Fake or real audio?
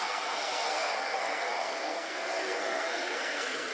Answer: fake